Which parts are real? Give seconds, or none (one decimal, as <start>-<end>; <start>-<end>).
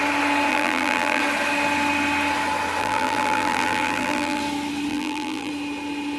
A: 0.0-0.5; 1.2-2.8; 4.4-4.9; 5.5-6.2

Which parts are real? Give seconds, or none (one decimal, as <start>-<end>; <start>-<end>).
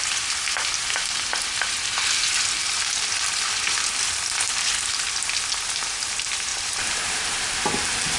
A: 0.0-6.5; 7.5-8.2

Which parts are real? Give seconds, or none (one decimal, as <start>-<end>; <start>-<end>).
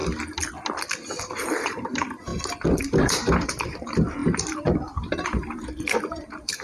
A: 0.0-1.2; 2.3-2.8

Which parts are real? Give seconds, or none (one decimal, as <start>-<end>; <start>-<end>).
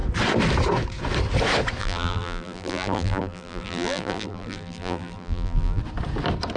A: 0.0-1.8; 5.8-6.6